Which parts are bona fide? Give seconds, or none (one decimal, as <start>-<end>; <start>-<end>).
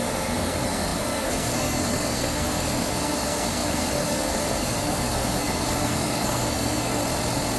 7.0-7.6